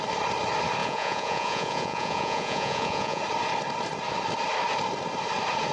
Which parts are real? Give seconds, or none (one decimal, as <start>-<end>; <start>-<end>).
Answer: 0.0-0.8; 3.2-5.7